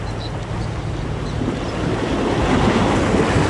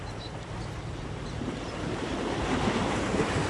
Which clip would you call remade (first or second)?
second